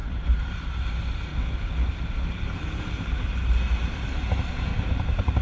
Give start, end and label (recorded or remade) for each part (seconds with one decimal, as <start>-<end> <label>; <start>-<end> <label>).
0.0-1.3 remade; 1.3-1.9 recorded; 1.9-5.4 remade